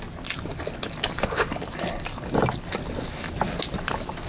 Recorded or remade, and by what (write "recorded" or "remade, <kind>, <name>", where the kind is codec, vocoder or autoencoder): recorded